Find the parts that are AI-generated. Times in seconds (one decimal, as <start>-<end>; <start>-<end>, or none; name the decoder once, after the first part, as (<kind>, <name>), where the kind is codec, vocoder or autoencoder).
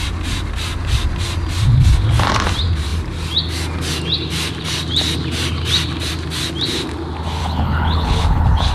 7.4-8.7 (codec, HILCodec)